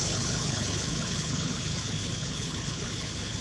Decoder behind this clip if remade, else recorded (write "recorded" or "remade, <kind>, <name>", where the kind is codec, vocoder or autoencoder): remade, codec, HILCodec